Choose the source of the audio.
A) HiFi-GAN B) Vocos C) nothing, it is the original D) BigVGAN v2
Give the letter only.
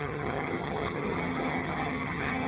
A